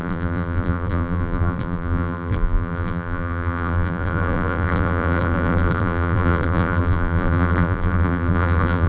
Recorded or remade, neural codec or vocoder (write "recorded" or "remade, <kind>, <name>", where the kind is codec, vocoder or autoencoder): remade, vocoder, BigVGAN v2